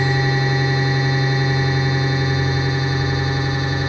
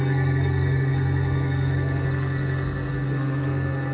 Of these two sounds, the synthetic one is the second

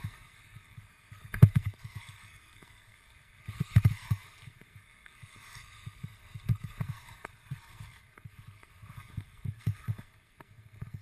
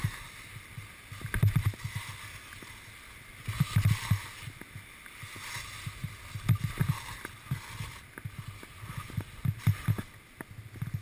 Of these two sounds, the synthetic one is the first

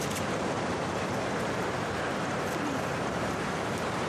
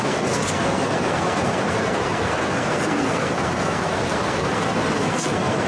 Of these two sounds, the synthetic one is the second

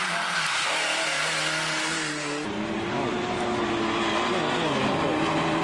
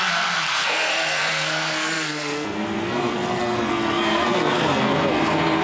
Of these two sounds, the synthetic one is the second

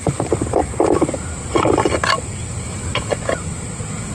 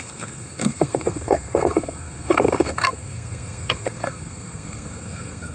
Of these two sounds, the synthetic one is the second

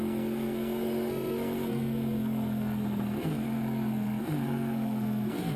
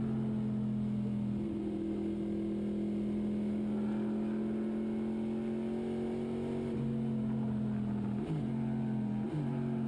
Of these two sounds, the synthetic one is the first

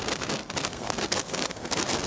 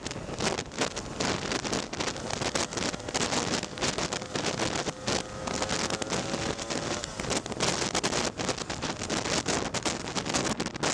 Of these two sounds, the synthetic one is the first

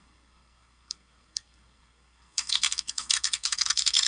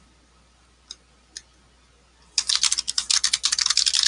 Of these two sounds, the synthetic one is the first